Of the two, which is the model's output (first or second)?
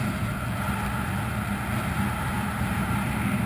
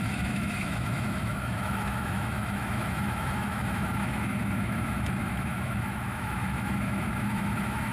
second